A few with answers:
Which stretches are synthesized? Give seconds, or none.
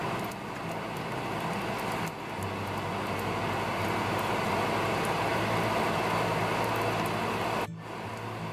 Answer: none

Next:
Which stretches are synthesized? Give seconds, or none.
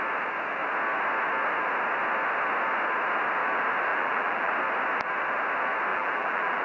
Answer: 3.9-4.5; 5.9-6.6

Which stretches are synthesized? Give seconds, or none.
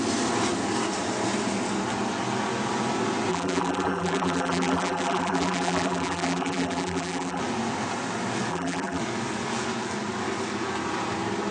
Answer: 3.3-7.4; 8.5-9.0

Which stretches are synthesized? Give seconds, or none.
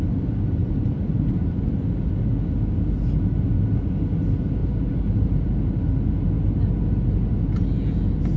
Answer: 0.6-1.7; 4.6-5.5